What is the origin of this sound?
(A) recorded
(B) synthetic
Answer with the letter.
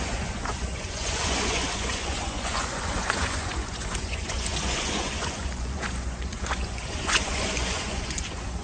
B